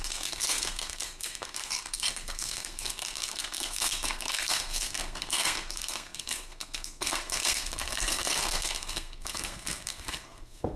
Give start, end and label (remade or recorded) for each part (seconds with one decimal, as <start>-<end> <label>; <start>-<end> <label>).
0.0-10.8 remade